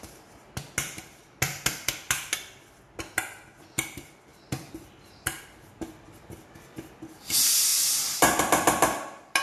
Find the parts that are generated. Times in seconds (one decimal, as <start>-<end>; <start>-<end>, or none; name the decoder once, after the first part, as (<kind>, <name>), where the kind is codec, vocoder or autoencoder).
4.3-5.4 (vocoder, BigVGAN v2); 7.7-8.4